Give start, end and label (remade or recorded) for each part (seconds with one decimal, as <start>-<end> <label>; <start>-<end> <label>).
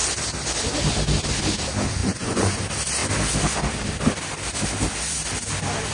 0.0-2.0 recorded; 2.0-2.6 remade; 2.6-5.9 recorded